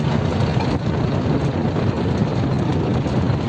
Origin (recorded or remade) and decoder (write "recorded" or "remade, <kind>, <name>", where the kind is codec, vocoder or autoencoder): recorded